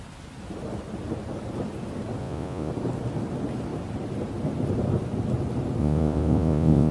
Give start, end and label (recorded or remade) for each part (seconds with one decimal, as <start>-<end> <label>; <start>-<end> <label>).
0.0-2.2 recorded; 2.2-2.7 remade; 2.7-5.8 recorded; 5.8-6.9 remade